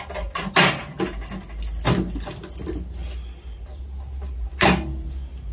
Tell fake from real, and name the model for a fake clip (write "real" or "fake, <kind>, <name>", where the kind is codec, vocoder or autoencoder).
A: real